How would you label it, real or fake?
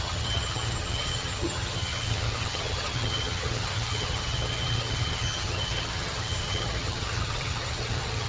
fake